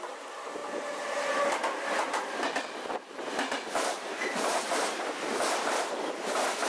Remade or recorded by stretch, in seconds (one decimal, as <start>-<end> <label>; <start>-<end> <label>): 0.0-6.7 recorded